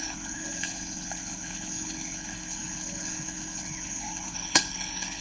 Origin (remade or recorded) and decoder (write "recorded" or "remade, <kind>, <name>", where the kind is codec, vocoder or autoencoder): remade, codec, HILCodec